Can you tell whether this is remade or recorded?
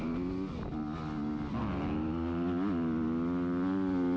recorded